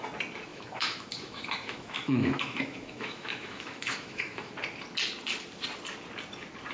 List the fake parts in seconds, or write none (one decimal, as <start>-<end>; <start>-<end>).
0.5-4.5